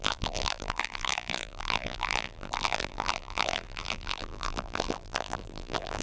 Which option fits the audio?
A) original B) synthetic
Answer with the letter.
B